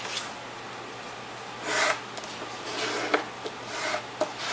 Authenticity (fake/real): real